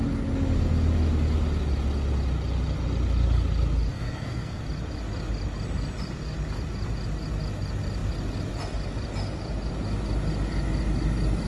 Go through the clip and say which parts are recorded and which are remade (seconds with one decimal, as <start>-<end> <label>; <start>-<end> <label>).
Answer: 0.0-3.9 recorded; 3.9-4.6 remade; 4.6-11.5 recorded